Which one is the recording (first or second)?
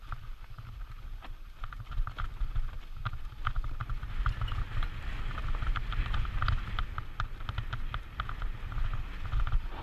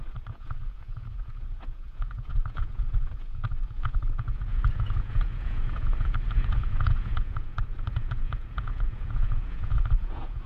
first